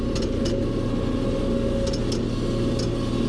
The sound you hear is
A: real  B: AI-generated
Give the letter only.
A